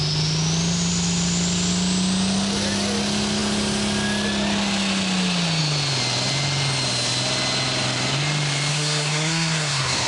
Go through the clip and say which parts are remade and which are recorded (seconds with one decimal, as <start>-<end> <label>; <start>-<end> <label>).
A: 0.0-8.7 recorded; 8.7-10.1 remade